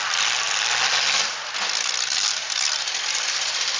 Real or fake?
fake